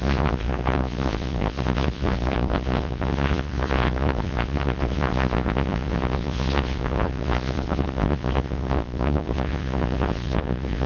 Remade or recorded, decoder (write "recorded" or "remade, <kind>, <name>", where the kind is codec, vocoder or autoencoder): remade, vocoder, Vocos